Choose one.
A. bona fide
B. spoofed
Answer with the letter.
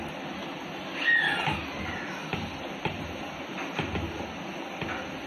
A